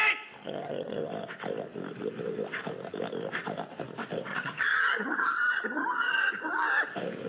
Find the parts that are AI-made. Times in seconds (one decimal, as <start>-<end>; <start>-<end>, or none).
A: 0.4-1.1; 4.3-6.3